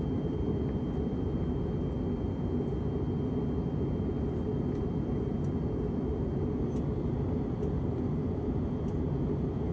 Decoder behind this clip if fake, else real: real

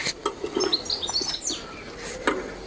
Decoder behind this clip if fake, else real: real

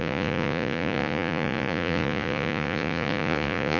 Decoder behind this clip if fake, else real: fake, vocoder, Vocos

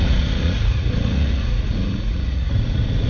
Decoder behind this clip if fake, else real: fake, vocoder, Vocos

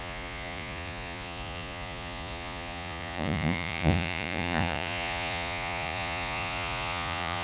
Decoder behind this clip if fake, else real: fake, vocoder, Vocos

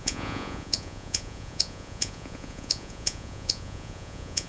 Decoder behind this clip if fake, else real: fake, vocoder, Vocos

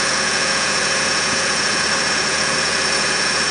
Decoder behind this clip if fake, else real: fake, vocoder, Vocos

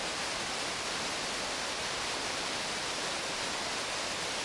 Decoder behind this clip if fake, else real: real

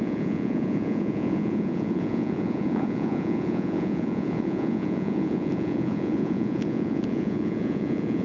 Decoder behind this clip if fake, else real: fake, vocoder, Vocos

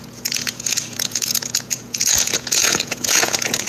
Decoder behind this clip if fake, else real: fake, vocoder, Vocos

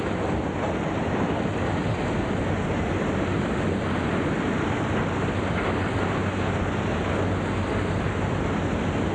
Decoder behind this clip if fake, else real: real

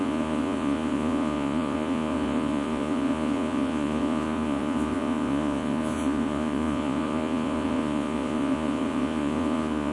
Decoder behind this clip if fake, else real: fake, vocoder, Vocos